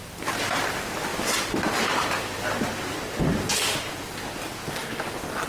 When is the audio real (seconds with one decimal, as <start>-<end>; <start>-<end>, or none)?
0.0-5.5